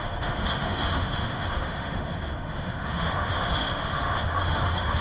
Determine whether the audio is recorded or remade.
remade